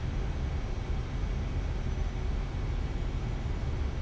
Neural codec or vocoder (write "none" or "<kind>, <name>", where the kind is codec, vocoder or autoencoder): none